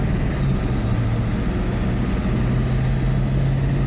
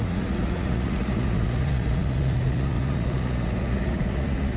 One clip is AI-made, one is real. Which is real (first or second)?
first